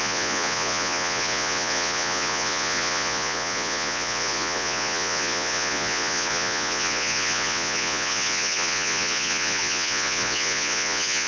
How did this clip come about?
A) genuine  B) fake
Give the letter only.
B